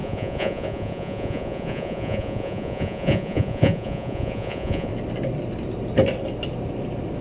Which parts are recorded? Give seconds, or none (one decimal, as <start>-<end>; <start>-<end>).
4.9-7.2